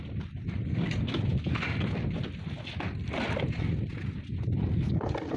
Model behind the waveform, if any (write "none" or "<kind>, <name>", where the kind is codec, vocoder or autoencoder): none